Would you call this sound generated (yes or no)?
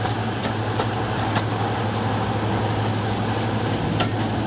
yes